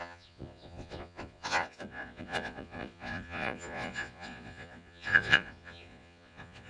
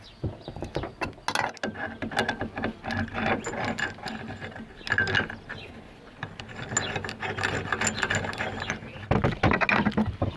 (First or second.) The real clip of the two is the second